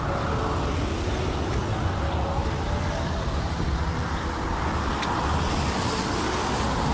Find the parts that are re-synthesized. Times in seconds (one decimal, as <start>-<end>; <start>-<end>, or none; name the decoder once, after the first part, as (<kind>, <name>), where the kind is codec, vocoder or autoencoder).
none